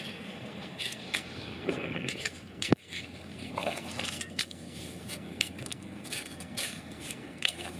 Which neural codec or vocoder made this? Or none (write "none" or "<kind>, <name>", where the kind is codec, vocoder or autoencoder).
codec, SNAC